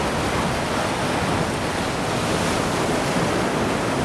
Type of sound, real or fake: real